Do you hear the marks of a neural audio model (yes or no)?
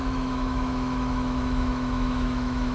yes